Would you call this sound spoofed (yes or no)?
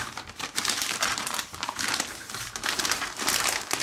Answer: yes